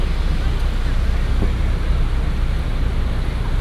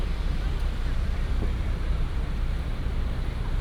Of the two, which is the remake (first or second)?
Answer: second